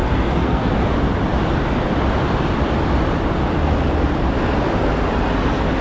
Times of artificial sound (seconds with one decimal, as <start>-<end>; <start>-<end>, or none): 0.0-0.7